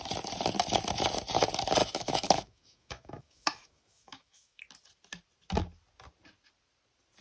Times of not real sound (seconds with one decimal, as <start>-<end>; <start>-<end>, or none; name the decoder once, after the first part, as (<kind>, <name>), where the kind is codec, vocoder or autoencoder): 1.8-4.6 (autoencoder, DAC-VAE)